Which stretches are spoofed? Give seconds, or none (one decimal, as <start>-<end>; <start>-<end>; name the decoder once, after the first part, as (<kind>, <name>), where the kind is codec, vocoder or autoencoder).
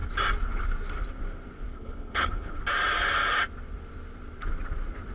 1.7-2.6 (codec, HILCodec)